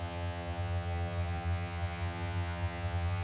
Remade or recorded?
remade